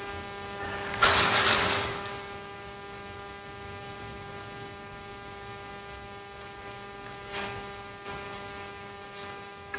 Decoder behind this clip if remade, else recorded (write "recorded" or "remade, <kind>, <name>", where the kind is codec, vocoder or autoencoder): remade, codec, DAC